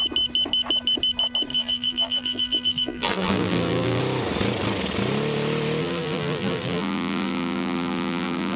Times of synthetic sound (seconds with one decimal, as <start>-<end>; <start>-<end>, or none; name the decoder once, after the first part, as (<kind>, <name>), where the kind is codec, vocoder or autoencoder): 1.5-4.0 (vocoder, BigVGAN v2); 5.8-8.6